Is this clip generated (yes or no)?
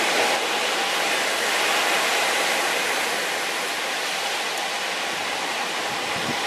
no